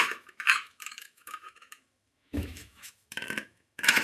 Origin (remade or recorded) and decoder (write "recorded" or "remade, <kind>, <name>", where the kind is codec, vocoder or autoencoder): remade, autoencoder, DAC-VAE